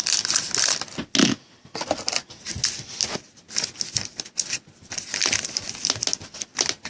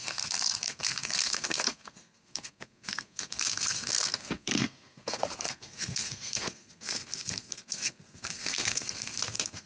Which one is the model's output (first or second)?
second